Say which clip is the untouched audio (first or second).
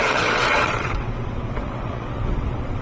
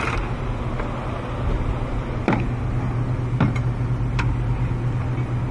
second